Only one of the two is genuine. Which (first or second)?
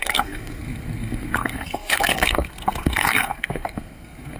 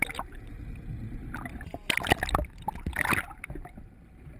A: second